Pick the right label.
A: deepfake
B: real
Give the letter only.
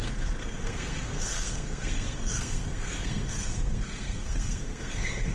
A